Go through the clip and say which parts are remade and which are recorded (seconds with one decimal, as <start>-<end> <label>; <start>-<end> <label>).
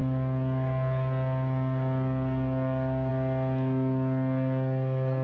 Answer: 0.0-5.2 recorded